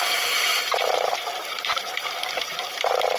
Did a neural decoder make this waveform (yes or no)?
yes